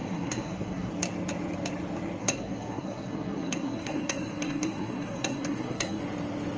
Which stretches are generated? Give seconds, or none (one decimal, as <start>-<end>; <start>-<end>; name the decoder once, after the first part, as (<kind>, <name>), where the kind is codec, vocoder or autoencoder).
0.0-0.9 (codec, SNAC); 2.2-6.0